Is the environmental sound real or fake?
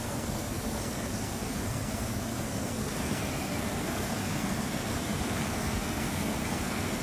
fake